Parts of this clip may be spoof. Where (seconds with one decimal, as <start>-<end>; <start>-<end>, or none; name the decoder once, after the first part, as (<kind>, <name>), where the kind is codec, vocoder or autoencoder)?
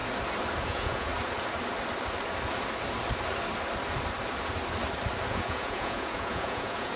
0.6-1.1 (vocoder, Vocos); 5.3-7.0